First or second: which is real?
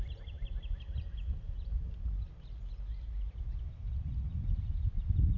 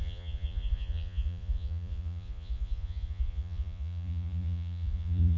first